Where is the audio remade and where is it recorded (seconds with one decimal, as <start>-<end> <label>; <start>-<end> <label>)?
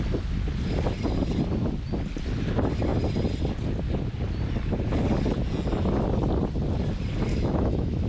0.0-7.3 recorded; 7.3-8.1 remade